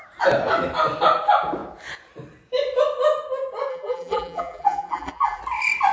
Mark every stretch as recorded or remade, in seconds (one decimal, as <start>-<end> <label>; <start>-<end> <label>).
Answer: 0.0-3.7 recorded; 3.7-5.4 remade; 5.4-5.9 recorded